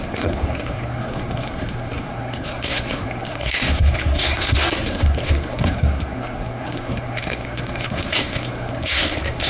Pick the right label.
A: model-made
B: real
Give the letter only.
A